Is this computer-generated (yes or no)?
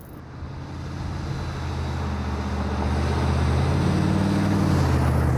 no